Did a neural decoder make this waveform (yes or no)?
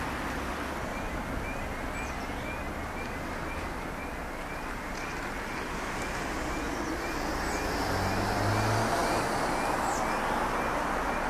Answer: no